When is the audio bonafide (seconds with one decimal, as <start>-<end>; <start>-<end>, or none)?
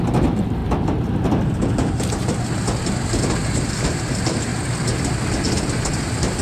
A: 0.6-3.5; 4.5-5.9